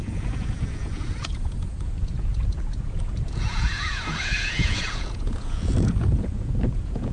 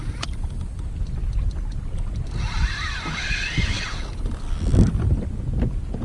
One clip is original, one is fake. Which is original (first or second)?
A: second